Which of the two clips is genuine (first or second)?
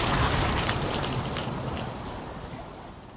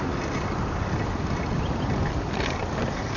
second